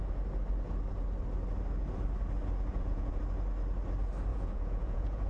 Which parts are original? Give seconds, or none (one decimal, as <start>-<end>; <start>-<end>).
0.0-2.7; 3.2-4.3

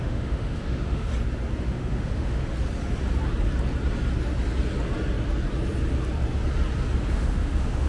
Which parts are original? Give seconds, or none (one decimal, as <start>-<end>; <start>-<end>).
1.1-1.6; 2.4-7.1

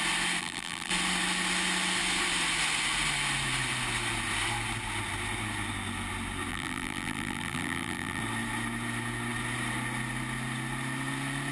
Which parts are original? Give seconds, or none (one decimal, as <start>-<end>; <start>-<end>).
0.0-0.4; 0.9-6.5; 8.2-11.5

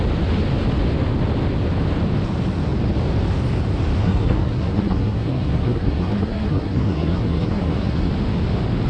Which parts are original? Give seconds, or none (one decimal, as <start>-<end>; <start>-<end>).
0.0-4.0; 8.1-8.9

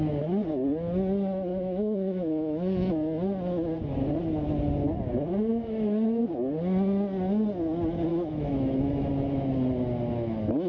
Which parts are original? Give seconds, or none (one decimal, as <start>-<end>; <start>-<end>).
0.0-1.5; 2.9-5.5; 6.2-8.1; 9.1-10.7

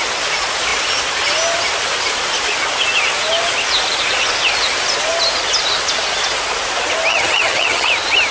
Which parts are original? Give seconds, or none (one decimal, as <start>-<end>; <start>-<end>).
0.0-7.1; 7.9-8.3

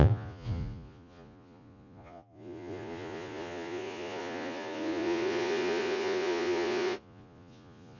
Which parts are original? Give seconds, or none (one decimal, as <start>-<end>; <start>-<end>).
none

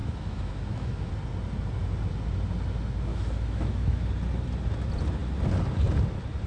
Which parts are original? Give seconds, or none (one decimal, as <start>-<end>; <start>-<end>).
1.1-3.1; 4.1-6.5